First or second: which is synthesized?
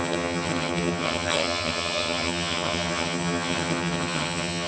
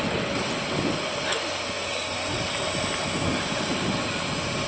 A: first